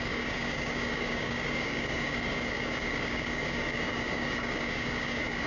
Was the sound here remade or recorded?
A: remade